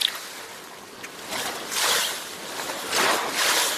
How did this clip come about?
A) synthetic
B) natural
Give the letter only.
B